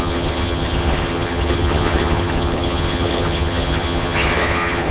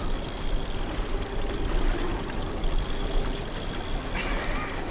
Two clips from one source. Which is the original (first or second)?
second